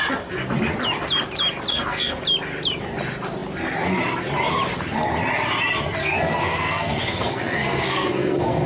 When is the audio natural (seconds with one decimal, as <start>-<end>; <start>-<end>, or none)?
0.0-1.7; 2.2-6.0